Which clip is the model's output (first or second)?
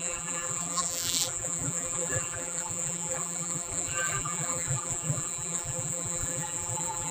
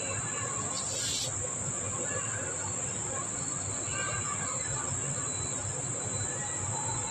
first